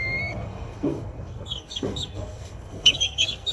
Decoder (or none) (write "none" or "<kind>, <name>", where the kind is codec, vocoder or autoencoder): codec, SNAC